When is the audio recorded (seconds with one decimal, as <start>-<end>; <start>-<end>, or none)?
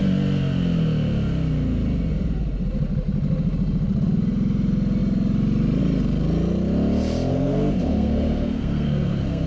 0.0-7.3